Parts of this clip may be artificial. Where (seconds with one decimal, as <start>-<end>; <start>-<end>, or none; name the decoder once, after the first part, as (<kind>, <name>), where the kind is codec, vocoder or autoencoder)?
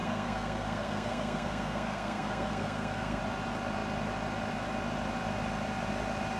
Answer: 0.0-3.2 (codec, SNAC)